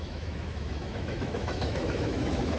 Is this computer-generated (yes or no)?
yes